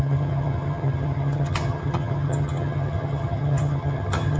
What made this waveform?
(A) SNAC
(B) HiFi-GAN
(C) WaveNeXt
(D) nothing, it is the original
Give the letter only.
B